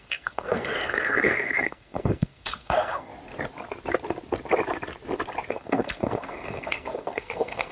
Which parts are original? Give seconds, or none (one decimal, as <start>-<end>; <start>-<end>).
3.1-5.5